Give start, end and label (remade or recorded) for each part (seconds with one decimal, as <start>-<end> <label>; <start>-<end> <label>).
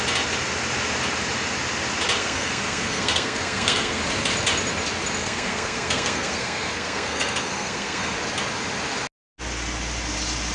0.0-2.2 recorded; 2.2-4.0 remade; 4.0-5.2 recorded; 5.2-8.1 remade; 8.1-10.5 recorded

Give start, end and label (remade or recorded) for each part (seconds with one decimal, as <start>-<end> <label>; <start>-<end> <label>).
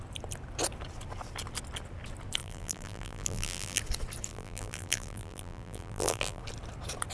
0.0-2.4 recorded; 2.4-3.8 remade; 3.8-4.3 recorded; 4.3-6.4 remade; 6.4-7.1 recorded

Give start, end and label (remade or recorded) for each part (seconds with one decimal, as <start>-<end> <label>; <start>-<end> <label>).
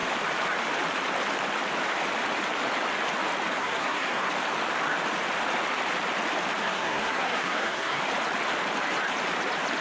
0.0-3.6 recorded; 3.6-4.3 remade; 4.3-6.6 recorded; 6.6-8.0 remade; 8.0-9.8 recorded